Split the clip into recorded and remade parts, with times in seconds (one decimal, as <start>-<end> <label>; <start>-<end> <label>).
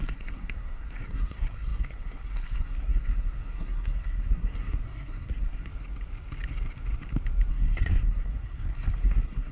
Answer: 0.0-5.7 remade; 5.7-7.5 recorded; 7.5-9.5 remade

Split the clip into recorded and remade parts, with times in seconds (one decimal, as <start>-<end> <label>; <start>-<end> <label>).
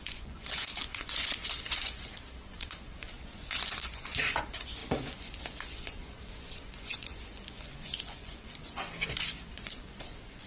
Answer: 0.0-10.5 remade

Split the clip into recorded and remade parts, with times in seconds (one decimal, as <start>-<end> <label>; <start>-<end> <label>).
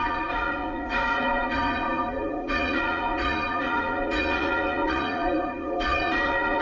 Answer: 0.0-6.6 remade